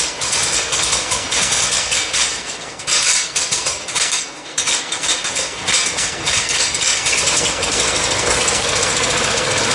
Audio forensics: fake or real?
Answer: fake